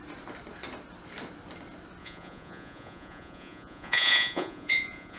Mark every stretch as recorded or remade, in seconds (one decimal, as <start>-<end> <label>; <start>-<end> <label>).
0.0-2.0 recorded; 2.0-5.2 remade